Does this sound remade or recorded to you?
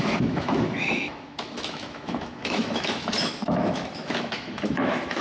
remade